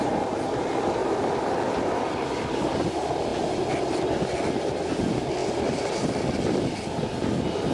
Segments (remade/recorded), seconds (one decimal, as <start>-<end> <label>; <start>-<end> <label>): 0.0-3.3 remade; 3.3-4.6 recorded; 4.6-7.7 remade